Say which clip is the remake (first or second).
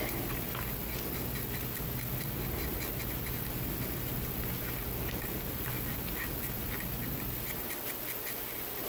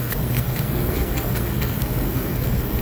second